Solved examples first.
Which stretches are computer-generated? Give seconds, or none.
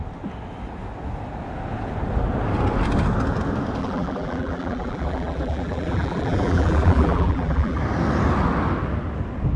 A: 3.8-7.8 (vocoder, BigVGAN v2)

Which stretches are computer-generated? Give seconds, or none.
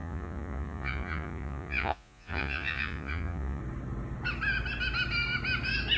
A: 0.0-3.6 (vocoder, Vocos)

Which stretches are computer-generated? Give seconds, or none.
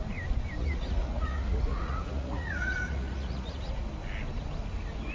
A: 0.6-3.7 (vocoder, Vocos)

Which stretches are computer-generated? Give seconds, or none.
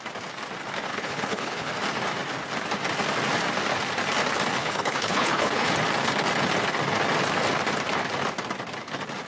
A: 0.9-1.7 (codec, HILCodec); 4.6-5.7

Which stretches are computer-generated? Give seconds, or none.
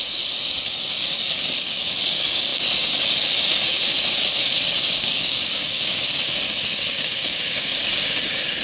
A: 0.0-8.6 (codec, DAC)